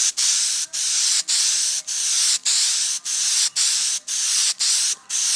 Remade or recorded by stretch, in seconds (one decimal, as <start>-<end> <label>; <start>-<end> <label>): 0.0-5.4 recorded